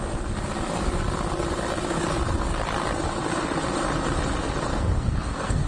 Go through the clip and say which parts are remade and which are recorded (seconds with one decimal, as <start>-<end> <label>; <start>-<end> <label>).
0.0-4.7 recorded; 4.7-5.7 remade